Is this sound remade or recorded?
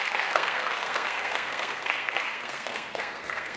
remade